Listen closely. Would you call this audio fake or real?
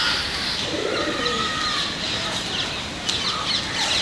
real